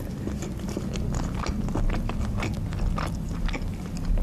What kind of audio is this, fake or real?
real